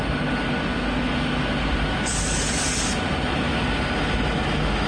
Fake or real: real